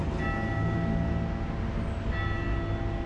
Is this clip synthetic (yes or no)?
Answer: no